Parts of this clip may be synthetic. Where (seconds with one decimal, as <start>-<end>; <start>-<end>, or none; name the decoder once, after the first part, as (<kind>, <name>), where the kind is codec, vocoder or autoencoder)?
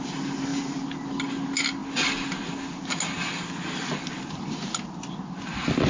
0.5-1.2 (vocoder, BigVGAN v2)